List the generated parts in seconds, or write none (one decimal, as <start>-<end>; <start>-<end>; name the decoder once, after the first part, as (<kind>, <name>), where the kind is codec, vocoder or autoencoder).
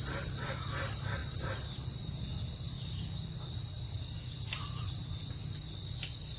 1.2-2.1 (vocoder, BigVGAN v2)